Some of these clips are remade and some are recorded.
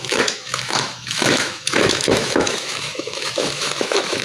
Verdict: remade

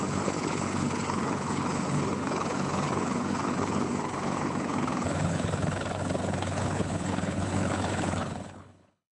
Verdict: remade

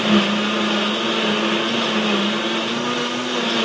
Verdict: recorded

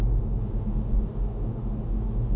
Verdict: remade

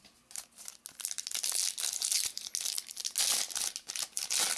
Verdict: recorded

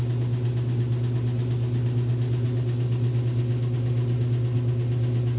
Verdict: recorded